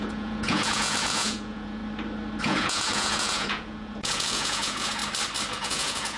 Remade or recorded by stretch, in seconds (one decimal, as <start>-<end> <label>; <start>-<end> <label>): 0.0-1.8 remade; 1.8-2.4 recorded; 2.4-5.0 remade; 5.0-5.5 recorded; 5.5-6.2 remade